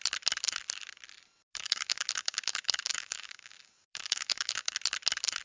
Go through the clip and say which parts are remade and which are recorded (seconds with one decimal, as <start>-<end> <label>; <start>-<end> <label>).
0.0-1.5 recorded; 1.5-4.7 remade; 4.7-5.4 recorded